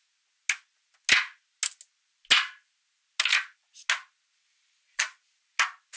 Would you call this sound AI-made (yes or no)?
no